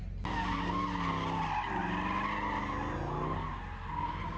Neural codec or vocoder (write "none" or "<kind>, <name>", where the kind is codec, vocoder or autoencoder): none